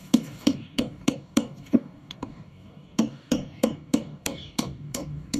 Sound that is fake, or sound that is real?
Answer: fake